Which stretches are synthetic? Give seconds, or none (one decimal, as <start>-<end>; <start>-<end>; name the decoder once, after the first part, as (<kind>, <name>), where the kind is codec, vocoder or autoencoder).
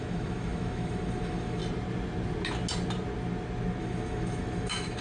0.0-1.6 (autoencoder, DAC-VAE); 3.8-5.0